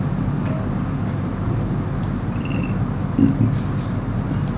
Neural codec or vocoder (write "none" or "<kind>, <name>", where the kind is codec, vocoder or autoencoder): none